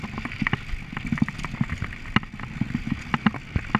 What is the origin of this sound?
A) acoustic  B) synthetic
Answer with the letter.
A